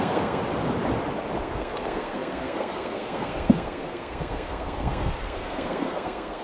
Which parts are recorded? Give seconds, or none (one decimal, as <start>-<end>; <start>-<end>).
0.4-1.4